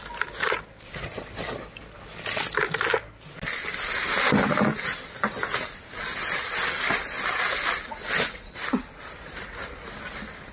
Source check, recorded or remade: recorded